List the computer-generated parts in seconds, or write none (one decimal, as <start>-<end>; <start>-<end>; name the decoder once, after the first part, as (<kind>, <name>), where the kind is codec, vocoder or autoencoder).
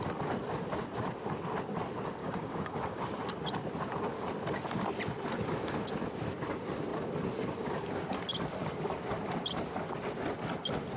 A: 2.2-3.0 (codec, DAC)